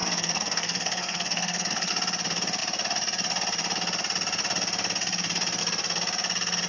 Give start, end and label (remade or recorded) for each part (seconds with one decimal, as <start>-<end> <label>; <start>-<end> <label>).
0.0-1.9 remade; 1.9-6.7 recorded